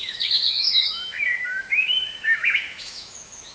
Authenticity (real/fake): fake